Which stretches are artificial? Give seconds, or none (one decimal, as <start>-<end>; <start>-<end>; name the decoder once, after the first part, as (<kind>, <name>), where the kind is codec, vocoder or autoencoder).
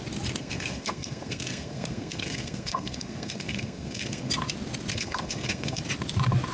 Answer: 0.4-4.3 (codec, SNAC); 4.9-5.8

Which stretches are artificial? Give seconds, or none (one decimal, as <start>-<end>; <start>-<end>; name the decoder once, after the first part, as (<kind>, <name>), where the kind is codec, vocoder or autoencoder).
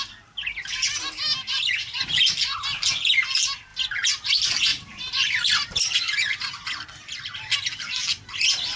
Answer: 3.7-4.3 (vocoder, BigVGAN v2); 4.7-5.8